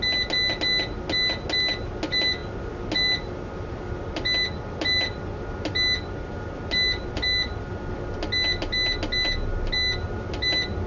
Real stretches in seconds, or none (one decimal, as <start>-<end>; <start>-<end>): 0.0-10.9